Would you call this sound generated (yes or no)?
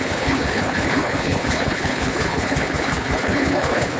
yes